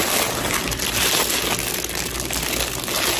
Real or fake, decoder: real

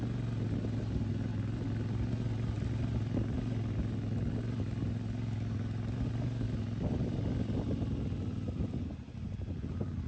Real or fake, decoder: real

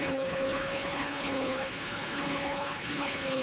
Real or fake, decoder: fake, codec, HILCodec